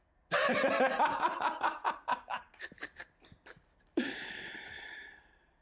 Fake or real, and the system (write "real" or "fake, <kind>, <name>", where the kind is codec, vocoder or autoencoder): fake, vocoder, BigVGAN v2